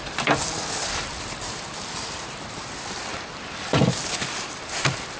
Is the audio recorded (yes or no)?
yes